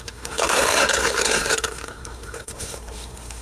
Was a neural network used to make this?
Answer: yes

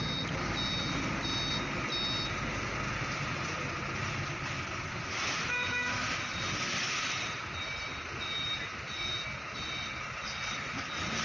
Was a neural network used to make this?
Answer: no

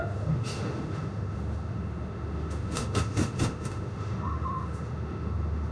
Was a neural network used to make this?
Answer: yes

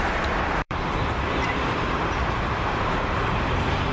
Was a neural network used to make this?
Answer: yes